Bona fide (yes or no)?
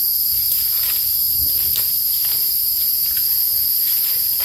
yes